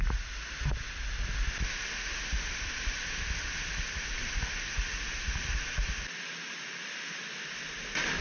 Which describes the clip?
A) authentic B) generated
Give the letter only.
A